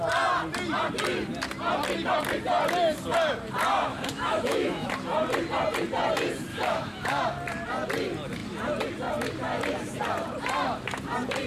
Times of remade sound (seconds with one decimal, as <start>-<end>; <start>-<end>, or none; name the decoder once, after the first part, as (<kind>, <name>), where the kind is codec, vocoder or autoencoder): 3.9-4.9 (autoencoder, DAC-VAE); 6.5-7.2